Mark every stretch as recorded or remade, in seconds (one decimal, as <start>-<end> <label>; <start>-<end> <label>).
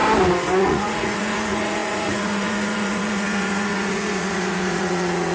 0.0-0.6 recorded; 0.6-5.3 remade